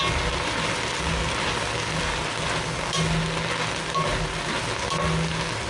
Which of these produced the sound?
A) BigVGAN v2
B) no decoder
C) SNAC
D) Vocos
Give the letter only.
B